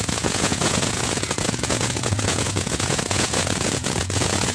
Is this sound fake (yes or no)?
yes